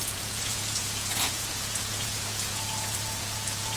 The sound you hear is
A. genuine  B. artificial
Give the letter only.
B